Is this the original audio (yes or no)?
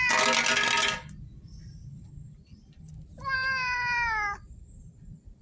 yes